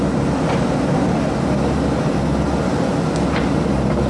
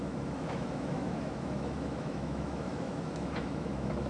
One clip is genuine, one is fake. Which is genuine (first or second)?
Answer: first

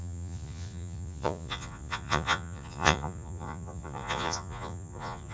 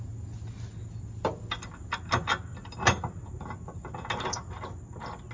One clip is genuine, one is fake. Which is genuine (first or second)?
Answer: second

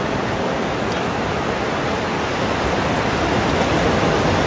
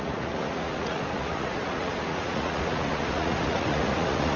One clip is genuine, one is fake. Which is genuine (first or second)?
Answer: first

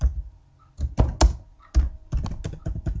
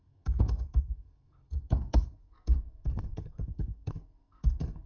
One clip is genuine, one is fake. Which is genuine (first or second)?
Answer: first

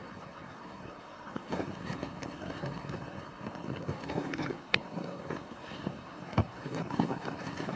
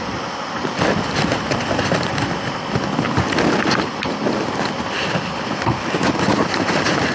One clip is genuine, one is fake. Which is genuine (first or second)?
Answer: second